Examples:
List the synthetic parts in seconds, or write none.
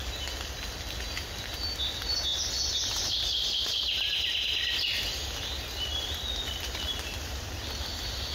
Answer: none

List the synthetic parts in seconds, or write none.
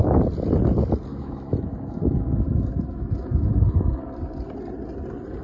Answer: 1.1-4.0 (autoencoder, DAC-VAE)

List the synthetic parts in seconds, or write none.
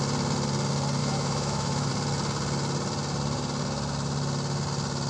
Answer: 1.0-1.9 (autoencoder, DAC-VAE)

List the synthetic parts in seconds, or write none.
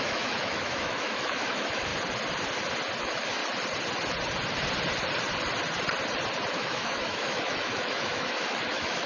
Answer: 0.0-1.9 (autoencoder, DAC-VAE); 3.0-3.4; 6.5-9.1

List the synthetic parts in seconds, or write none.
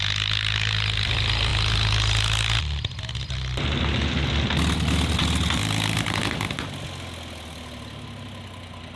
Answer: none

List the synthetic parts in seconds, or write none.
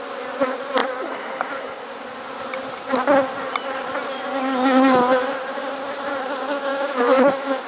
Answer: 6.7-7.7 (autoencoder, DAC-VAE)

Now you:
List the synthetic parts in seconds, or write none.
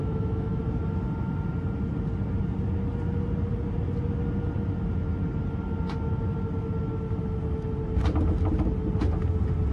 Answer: 0.0-0.6 (autoencoder, DAC-VAE)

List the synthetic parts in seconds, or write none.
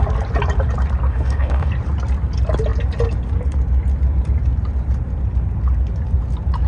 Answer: 1.1-1.7 (autoencoder, DAC-VAE)